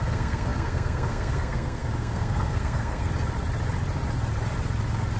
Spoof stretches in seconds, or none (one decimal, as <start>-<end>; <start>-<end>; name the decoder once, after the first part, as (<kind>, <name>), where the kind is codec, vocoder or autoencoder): 0.0-3.1 (codec, SNAC)